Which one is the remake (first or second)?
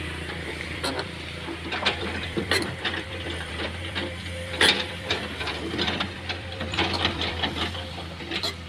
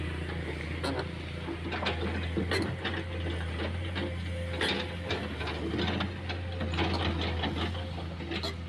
first